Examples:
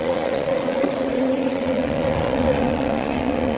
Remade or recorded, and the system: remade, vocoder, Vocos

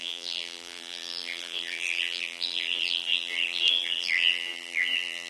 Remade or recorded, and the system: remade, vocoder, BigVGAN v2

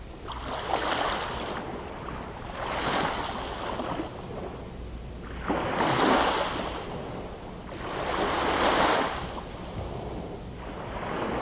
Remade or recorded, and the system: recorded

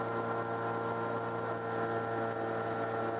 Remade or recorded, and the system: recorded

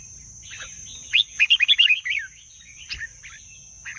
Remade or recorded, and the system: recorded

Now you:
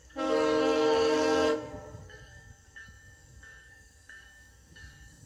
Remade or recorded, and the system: remade, codec, SNAC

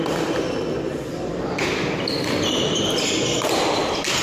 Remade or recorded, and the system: recorded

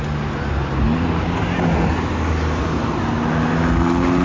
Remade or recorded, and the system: recorded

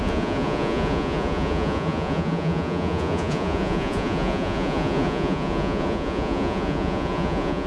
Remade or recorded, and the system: remade, vocoder, Vocos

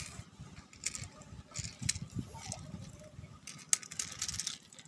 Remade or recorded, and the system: recorded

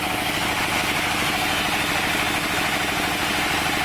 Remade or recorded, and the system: recorded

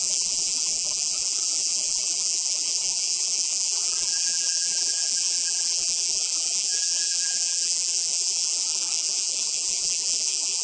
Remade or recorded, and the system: remade, vocoder, BigVGAN v2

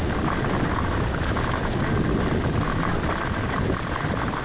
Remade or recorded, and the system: recorded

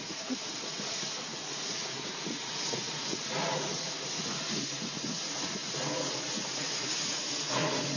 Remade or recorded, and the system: remade, vocoder, Vocos